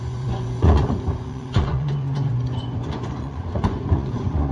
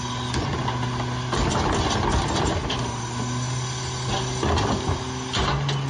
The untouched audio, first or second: second